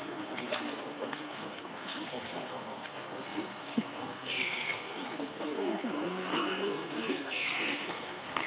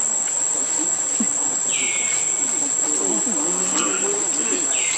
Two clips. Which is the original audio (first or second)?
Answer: second